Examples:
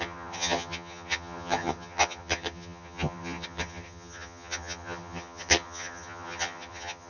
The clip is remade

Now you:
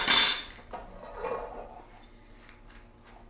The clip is recorded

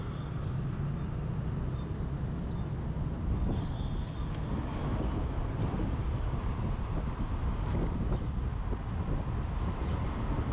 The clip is recorded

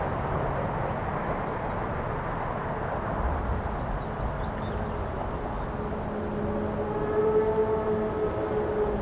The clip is recorded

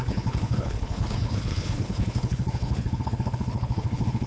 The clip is remade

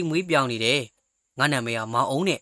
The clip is recorded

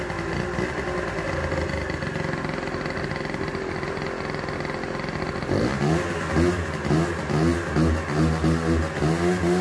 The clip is recorded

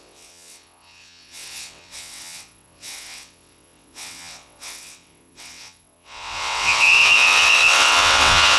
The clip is remade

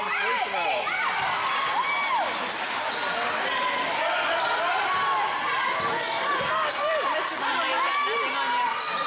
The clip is recorded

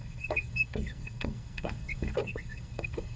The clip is remade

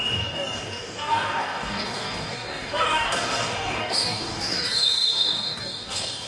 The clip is remade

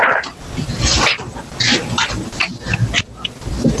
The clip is recorded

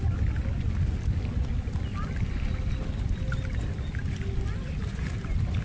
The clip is recorded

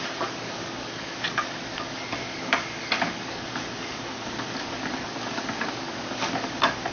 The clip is remade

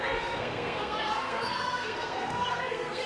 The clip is remade